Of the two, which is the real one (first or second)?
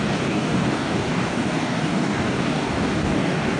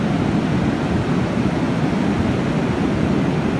second